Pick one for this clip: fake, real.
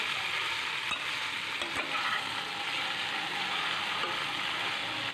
fake